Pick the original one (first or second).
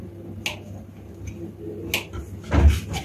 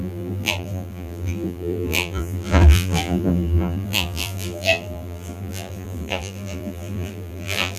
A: first